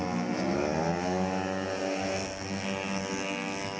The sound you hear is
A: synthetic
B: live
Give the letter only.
B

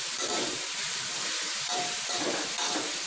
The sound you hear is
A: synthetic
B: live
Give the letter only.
A